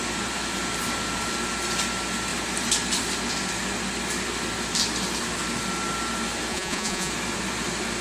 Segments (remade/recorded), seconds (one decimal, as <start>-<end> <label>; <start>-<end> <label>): 0.0-6.5 recorded; 6.5-7.1 remade; 7.1-8.0 recorded